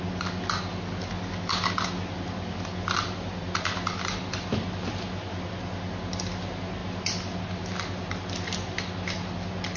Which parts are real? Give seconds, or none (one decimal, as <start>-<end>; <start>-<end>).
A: 0.0-9.8